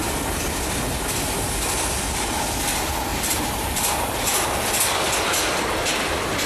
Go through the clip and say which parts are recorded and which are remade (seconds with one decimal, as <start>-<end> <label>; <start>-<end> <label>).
0.0-3.1 recorded; 3.1-4.1 remade; 4.1-6.5 recorded